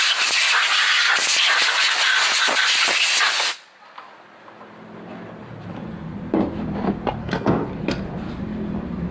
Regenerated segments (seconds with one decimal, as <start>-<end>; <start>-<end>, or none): 7.2-7.7